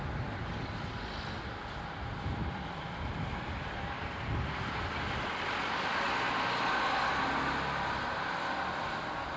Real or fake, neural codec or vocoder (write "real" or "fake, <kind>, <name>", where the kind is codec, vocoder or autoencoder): real